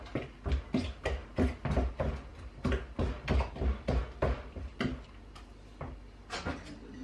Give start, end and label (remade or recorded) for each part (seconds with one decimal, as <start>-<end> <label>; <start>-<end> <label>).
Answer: 0.0-7.0 recorded